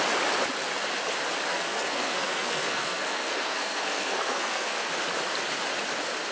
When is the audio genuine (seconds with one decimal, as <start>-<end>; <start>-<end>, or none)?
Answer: 0.0-1.5; 4.9-6.3